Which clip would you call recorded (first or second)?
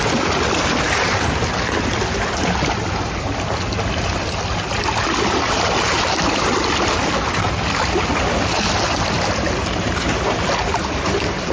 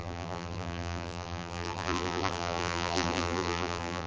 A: first